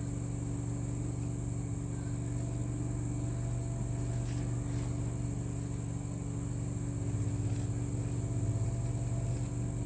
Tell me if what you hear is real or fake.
real